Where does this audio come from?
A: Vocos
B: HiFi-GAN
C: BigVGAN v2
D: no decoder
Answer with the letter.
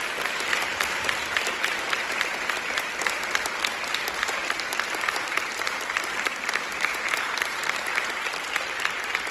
C